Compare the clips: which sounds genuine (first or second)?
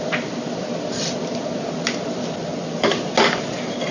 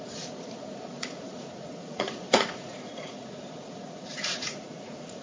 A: first